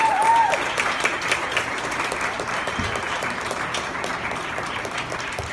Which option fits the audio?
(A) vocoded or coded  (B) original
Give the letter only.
A